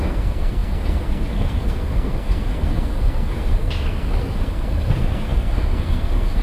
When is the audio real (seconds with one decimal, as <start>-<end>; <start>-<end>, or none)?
none